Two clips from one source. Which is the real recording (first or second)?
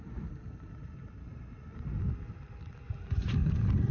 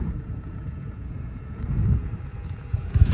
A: first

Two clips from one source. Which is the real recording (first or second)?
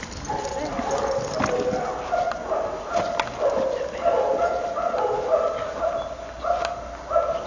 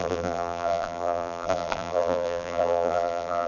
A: first